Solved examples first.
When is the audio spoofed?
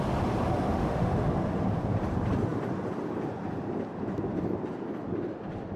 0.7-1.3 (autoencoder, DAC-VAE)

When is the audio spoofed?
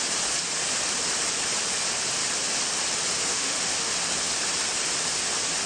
3.3-3.9 (autoencoder, DAC-VAE)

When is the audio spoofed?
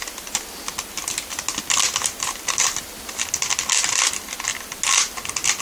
none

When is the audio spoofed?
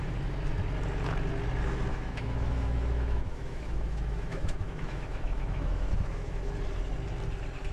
1.9-6.5 (autoencoder, DAC-VAE)